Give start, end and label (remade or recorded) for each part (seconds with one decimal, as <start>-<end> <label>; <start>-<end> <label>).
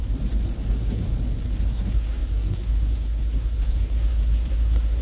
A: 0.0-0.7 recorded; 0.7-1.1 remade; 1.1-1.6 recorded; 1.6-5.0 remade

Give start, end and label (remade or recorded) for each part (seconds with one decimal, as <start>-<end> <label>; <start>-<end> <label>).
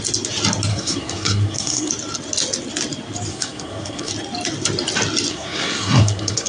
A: 0.0-0.7 recorded; 0.7-1.9 remade; 1.9-3.3 recorded; 3.3-4.1 remade; 4.1-5.3 recorded; 5.3-6.5 remade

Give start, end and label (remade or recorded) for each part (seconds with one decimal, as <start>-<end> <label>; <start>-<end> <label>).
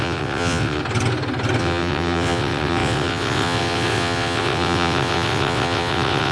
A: 0.0-0.8 remade; 0.8-1.6 recorded; 1.6-6.3 remade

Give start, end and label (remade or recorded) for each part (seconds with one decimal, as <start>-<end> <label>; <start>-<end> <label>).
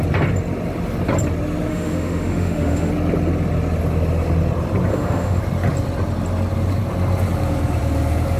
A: 0.0-1.7 recorded; 1.7-2.9 remade; 2.9-4.9 recorded; 4.9-5.4 remade; 5.4-8.4 recorded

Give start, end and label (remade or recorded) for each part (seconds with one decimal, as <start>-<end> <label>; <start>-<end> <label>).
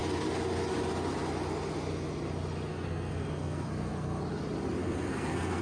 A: 0.0-2.7 recorded; 2.7-4.2 remade; 4.2-4.8 recorded; 4.8-5.6 remade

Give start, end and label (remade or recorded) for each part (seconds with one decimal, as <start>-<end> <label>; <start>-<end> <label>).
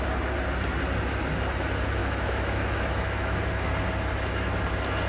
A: 0.0-2.0 recorded; 2.0-3.4 remade; 3.4-5.1 recorded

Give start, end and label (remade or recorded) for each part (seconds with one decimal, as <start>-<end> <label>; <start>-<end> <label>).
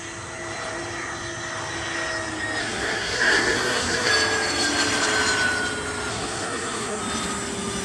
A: 0.0-2.6 recorded; 2.6-4.1 remade; 4.1-6.1 recorded; 6.1-7.0 remade; 7.0-7.8 recorded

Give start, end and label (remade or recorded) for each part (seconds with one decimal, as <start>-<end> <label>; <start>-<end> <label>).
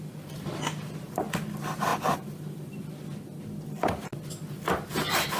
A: 0.0-5.4 recorded